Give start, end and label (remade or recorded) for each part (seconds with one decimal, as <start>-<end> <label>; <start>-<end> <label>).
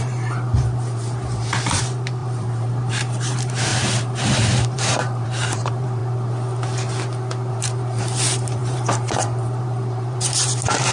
0.0-6.0 remade; 6.0-7.5 recorded; 7.5-10.9 remade